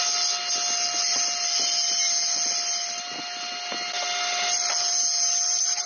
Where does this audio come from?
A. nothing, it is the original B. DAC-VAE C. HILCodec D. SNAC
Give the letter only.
A